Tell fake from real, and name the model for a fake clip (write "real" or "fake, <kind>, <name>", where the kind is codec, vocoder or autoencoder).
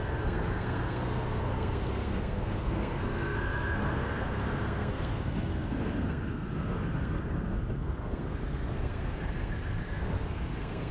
fake, codec, SNAC